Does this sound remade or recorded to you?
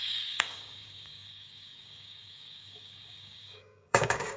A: remade